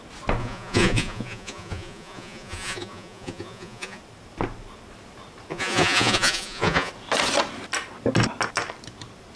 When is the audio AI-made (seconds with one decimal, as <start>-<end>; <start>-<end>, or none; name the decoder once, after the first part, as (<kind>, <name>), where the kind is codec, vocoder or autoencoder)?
0.4-4.0 (vocoder, Vocos); 5.5-6.9